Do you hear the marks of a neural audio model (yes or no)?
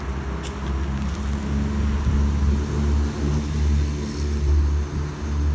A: no